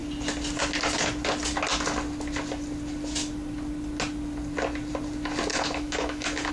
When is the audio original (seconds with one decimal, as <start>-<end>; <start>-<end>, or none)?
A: 0.0-5.5